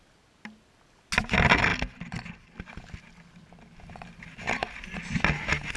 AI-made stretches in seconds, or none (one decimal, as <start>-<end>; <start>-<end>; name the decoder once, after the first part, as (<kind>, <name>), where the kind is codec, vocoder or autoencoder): none